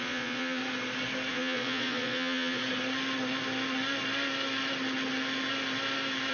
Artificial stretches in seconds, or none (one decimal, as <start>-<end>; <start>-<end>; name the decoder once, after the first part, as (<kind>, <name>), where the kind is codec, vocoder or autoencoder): 0.0-0.6 (vocoder, Vocos); 1.3-2.6